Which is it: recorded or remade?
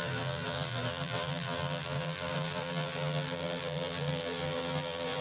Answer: remade